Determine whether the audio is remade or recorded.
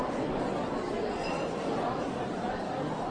remade